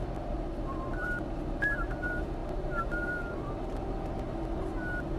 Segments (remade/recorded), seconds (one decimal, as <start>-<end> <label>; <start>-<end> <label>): 0.0-5.2 recorded